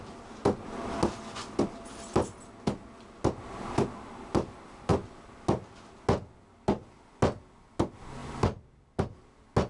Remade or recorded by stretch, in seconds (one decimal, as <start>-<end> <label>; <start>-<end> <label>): 0.0-9.7 recorded